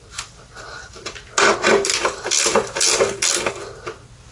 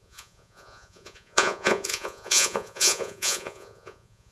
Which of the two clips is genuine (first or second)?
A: first